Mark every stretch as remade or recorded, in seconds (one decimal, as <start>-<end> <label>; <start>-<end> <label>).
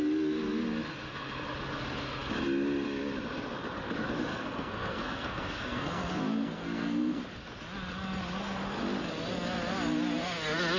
0.0-4.3 recorded; 4.3-7.2 remade; 7.2-10.8 recorded